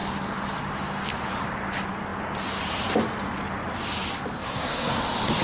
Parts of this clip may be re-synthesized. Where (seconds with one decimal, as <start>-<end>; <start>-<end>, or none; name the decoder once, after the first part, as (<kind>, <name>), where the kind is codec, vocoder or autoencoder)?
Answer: 4.4-5.0 (codec, SNAC)